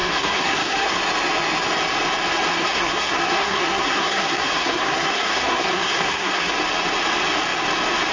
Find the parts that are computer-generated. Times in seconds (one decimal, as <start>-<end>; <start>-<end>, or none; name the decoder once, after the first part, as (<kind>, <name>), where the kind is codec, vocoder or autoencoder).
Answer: 0.0-1.0 (codec, SNAC); 2.5-6.5